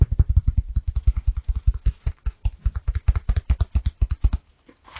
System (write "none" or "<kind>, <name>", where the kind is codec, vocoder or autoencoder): none